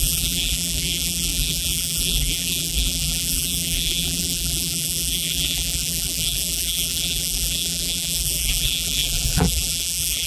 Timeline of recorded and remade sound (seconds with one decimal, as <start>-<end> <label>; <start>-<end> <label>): 0.0-10.3 remade